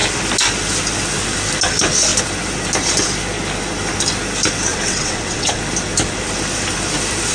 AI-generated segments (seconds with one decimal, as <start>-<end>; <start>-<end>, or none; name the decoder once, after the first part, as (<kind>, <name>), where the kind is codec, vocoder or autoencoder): 4.7-5.6 (vocoder, WaveNeXt)